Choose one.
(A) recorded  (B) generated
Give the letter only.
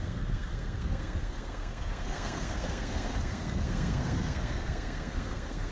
B